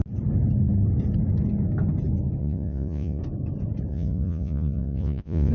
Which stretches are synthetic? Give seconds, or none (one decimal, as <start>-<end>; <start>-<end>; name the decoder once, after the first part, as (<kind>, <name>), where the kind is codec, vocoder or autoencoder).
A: 2.4-3.2 (vocoder, Vocos); 3.9-5.5

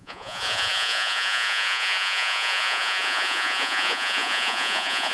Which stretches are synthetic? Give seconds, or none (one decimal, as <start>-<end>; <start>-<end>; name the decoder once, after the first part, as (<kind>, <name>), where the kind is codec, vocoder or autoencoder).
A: 0.0-5.1 (vocoder, Vocos)

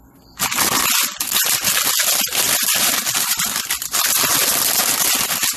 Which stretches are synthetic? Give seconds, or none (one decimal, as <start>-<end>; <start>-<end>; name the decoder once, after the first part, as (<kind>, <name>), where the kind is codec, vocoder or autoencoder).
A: 0.0-1.6 (vocoder, BigVGAN v2); 2.2-4.3

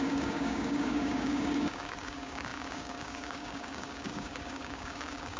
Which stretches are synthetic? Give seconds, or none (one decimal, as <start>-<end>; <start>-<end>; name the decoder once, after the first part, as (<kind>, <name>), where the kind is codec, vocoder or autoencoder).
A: 0.0-5.4 (codec, DAC)

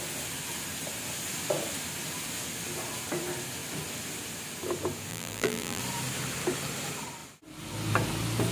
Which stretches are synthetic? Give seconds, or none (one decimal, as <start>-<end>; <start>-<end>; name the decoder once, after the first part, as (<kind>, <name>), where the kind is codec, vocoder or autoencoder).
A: 5.1-5.8 (vocoder, BigVGAN v2)